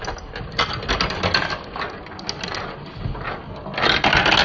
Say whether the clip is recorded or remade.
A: recorded